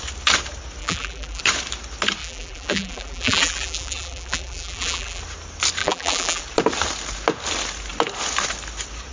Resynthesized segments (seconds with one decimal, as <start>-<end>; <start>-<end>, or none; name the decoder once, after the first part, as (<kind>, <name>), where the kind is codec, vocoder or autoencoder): 0.8-1.4 (vocoder, BigVGAN v2); 2.2-5.2; 5.8-6.4